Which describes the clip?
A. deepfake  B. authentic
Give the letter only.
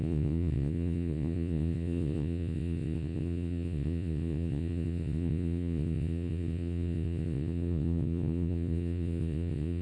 A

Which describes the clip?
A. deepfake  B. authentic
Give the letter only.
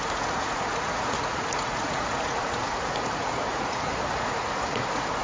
A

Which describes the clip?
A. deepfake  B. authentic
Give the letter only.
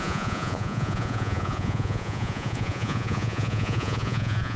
A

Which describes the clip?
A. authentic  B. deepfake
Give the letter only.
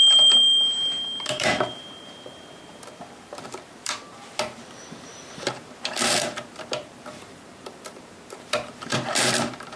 B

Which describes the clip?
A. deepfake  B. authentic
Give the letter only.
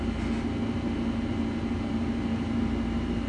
B